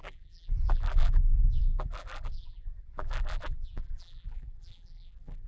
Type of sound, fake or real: fake